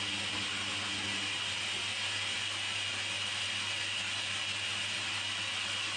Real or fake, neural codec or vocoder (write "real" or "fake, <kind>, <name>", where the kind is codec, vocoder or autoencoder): real